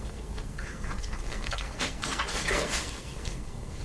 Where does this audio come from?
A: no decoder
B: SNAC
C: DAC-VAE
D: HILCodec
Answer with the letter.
B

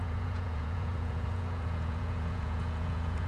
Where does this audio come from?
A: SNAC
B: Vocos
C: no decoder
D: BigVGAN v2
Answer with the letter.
B